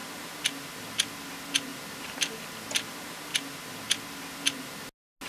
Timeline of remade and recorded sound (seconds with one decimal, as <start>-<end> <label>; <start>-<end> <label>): 0.0-5.3 recorded